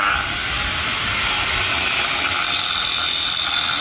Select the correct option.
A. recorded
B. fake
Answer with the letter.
A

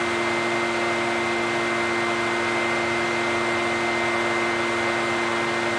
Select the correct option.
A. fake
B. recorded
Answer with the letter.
B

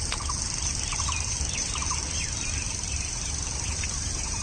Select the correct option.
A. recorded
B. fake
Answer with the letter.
A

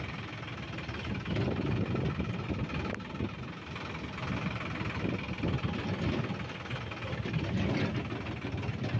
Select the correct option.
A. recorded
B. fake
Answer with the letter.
A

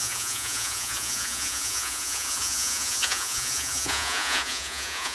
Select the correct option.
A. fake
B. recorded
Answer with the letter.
A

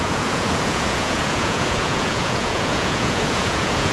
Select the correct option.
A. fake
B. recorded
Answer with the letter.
A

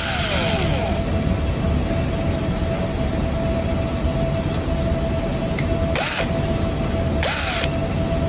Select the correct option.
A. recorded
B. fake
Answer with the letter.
A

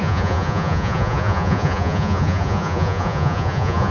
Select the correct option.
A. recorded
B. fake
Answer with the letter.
B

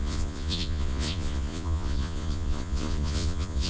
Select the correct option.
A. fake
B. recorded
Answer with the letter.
A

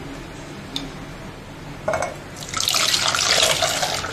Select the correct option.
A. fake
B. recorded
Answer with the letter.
B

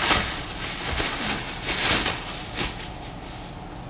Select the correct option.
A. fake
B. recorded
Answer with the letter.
B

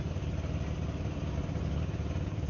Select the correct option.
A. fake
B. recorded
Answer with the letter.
B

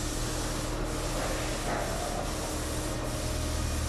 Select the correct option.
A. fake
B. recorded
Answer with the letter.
B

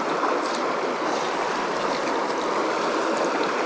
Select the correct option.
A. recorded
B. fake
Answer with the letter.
A